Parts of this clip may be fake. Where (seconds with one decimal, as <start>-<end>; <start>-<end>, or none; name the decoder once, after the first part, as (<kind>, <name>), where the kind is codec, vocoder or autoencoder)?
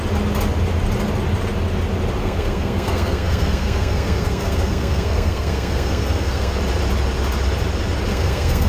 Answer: 2.2-6.6 (codec, SNAC); 8.1-8.7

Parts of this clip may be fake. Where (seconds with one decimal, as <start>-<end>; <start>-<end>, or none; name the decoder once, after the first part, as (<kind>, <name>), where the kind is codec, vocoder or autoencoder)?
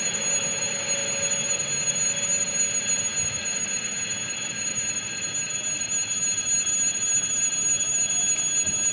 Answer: none